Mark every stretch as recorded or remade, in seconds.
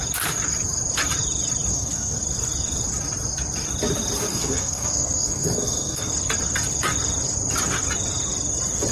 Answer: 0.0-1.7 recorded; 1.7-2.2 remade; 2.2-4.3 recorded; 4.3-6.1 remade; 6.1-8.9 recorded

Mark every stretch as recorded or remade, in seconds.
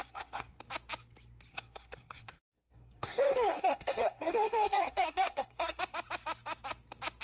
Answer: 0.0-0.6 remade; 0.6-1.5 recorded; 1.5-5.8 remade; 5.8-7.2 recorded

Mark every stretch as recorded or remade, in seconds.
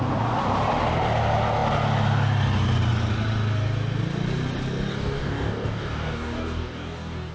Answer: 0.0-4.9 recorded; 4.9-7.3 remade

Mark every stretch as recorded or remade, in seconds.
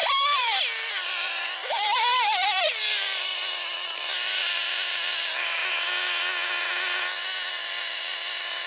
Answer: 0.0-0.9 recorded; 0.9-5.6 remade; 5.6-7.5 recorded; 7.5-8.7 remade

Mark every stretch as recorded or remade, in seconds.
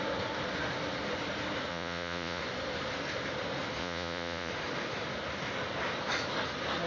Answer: 0.0-1.7 recorded; 1.7-2.4 remade; 2.4-3.8 recorded; 3.8-4.5 remade; 4.5-6.9 recorded